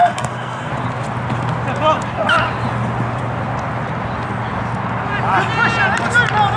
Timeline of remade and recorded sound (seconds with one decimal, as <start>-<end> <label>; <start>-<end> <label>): 0.0-0.7 remade; 0.7-6.6 recorded